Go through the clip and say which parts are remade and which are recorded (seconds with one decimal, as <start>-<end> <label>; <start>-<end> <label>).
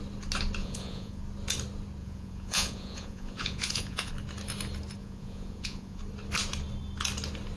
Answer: 0.0-0.6 recorded; 0.6-1.2 remade; 1.2-2.0 recorded; 2.0-4.1 remade; 4.1-5.0 recorded; 5.0-6.0 remade; 6.0-7.6 recorded